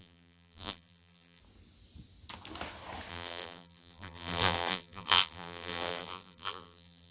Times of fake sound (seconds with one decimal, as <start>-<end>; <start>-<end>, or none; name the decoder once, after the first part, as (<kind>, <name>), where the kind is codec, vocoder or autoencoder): 0.0-1.4 (vocoder, BigVGAN v2); 3.1-7.1